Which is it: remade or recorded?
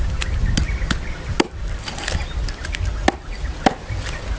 recorded